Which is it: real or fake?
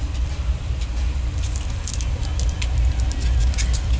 real